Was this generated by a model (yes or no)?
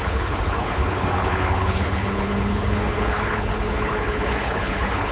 yes